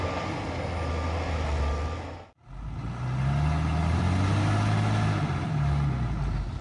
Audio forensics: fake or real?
real